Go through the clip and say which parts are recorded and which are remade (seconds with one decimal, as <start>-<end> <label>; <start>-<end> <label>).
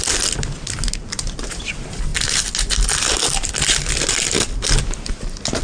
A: 0.0-5.6 recorded